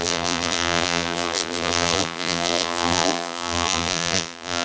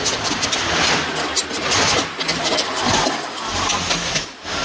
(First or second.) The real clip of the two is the second